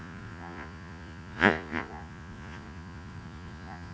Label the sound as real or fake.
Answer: fake